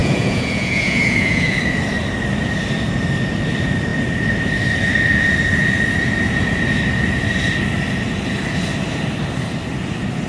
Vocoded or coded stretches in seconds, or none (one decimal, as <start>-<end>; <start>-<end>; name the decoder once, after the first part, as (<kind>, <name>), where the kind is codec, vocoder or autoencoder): 0.0-1.6 (vocoder, Vocos)